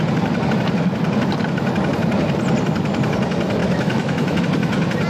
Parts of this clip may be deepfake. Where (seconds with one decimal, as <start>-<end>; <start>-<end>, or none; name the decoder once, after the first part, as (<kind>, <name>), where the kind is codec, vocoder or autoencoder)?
3.6-4.4 (autoencoder, DAC-VAE)